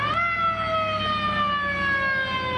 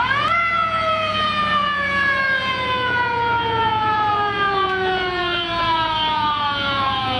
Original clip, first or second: first